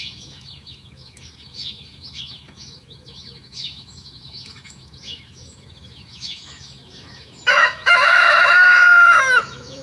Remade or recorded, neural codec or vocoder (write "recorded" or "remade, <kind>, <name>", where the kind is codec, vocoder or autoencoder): remade, autoencoder, DAC-VAE